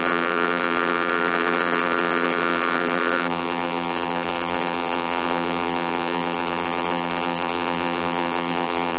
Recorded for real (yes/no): no